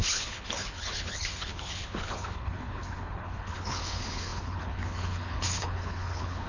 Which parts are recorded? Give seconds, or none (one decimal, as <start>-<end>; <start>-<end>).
none